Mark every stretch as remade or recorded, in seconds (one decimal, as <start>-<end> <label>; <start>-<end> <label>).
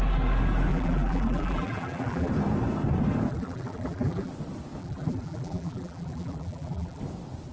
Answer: 0.0-0.7 recorded; 0.7-2.3 remade; 2.3-3.3 recorded; 3.3-4.3 remade; 4.3-4.8 recorded; 4.8-7.0 remade; 7.0-7.5 recorded